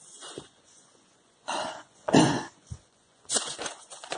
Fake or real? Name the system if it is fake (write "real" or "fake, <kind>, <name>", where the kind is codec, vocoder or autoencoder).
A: fake, vocoder, Vocos